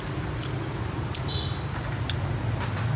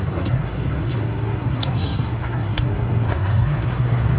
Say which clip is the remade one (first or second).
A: second